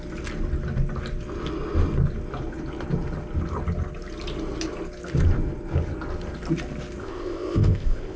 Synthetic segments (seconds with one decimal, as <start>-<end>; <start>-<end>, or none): 7.0-8.2